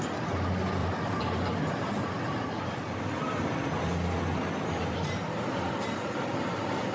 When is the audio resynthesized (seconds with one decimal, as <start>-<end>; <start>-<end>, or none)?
0.8-1.7